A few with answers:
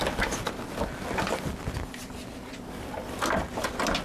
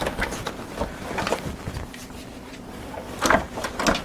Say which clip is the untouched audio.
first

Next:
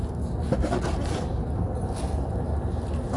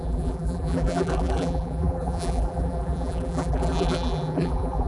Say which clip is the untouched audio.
first